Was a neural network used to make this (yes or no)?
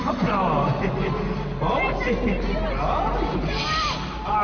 no